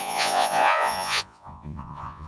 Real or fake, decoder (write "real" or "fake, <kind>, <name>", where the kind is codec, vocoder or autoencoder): fake, vocoder, Vocos